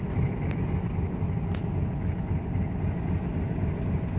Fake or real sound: real